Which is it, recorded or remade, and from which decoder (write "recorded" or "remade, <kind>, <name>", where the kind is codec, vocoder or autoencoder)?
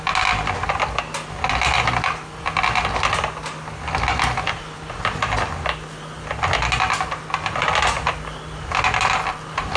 recorded